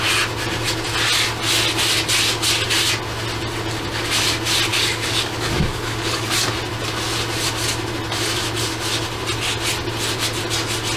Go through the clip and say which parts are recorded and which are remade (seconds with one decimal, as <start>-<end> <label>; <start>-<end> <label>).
0.0-4.7 recorded; 4.7-6.5 remade; 6.5-11.0 recorded